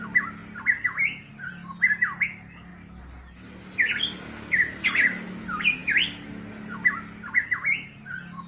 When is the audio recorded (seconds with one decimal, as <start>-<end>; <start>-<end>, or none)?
0.0-8.5